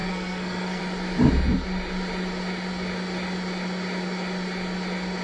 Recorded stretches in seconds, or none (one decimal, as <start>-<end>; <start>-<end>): 0.8-5.2